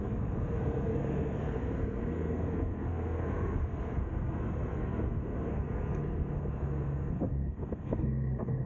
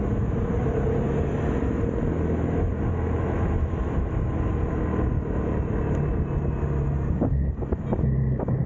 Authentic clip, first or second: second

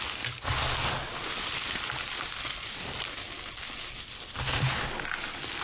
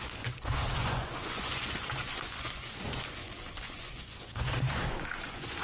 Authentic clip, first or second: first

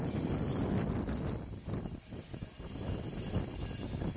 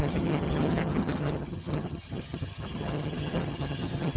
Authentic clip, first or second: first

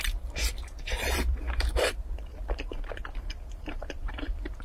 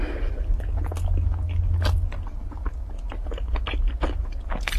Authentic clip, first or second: second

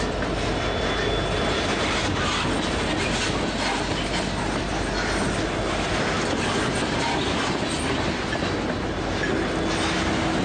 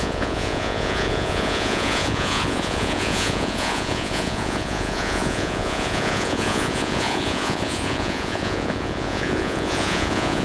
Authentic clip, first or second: first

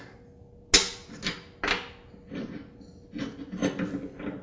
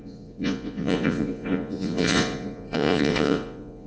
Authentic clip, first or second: first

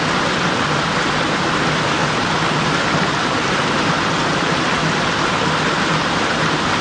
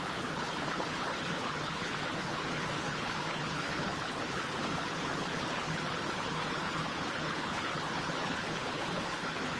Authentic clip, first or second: first